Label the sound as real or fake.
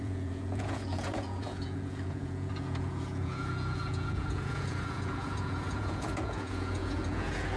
fake